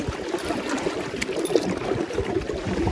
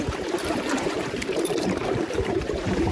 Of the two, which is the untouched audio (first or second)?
first